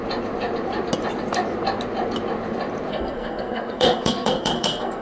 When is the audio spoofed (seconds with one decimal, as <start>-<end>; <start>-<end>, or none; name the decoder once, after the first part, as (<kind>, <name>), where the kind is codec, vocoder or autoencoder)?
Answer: 2.9-5.0 (codec, SNAC)